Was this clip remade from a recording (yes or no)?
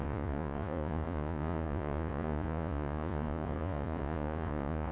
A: yes